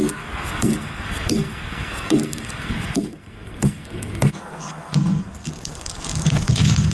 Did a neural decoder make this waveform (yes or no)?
yes